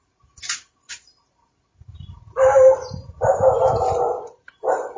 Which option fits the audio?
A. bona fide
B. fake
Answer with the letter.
B